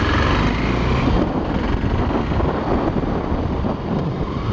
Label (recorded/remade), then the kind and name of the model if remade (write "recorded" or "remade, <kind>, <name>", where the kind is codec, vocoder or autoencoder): recorded